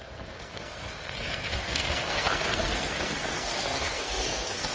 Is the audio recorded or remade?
remade